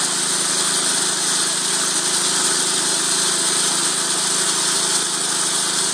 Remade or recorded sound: recorded